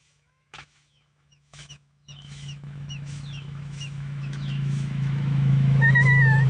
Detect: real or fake fake